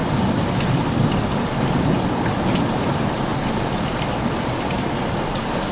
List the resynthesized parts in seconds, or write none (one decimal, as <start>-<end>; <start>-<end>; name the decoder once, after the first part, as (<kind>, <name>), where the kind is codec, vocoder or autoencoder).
0.0-2.3 (vocoder, BigVGAN v2); 3.3-5.7